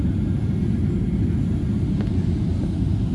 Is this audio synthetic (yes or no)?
no